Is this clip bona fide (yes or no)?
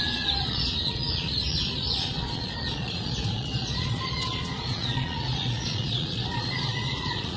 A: no